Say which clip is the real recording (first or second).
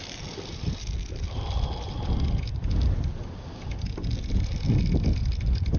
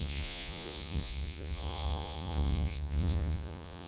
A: first